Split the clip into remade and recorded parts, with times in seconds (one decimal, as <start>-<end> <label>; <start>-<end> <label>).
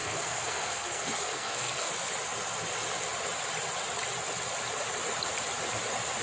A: 0.0-1.9 remade; 1.9-6.2 recorded